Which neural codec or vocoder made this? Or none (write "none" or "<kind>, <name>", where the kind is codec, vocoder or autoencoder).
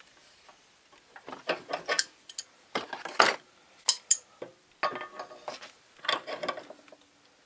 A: none